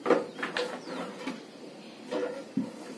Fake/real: real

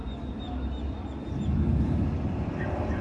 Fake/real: real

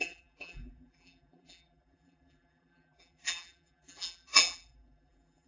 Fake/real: fake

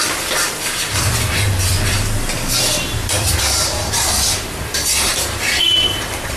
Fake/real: fake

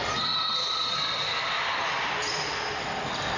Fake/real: real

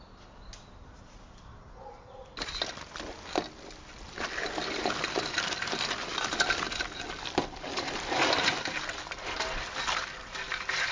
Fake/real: real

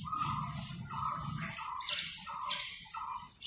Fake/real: real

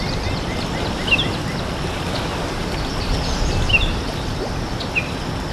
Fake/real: real